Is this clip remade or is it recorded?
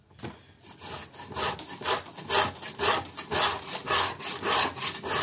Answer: recorded